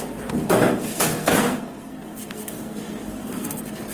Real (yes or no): no